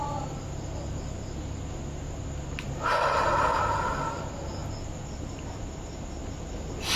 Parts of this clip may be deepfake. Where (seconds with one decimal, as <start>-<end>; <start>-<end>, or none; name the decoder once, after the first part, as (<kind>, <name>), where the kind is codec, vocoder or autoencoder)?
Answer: none